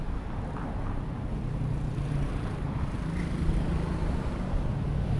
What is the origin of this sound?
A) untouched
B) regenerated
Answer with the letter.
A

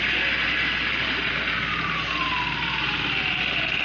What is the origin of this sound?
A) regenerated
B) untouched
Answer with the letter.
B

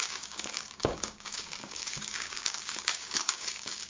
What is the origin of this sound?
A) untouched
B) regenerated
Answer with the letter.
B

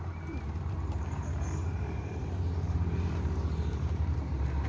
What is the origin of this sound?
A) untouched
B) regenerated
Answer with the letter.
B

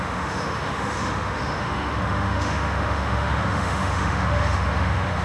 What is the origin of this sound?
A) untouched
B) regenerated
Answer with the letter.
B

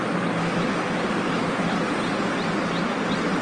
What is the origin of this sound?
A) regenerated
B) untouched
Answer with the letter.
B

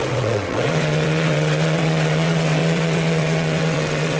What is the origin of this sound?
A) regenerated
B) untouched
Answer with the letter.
A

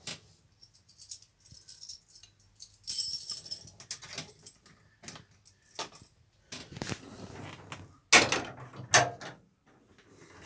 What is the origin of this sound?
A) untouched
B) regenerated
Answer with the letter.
A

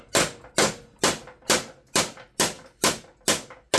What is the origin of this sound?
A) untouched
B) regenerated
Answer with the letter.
A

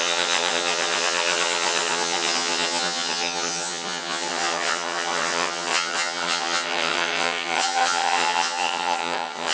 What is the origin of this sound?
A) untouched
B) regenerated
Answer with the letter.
B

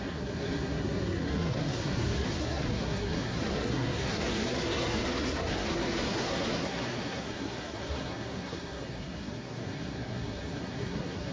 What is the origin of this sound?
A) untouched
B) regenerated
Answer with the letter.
B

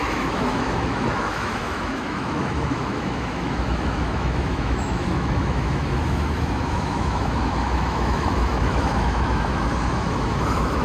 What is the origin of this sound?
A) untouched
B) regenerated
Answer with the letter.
B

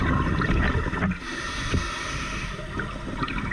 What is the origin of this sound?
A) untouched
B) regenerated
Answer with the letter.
A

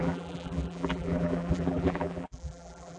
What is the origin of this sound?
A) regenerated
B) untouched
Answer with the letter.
A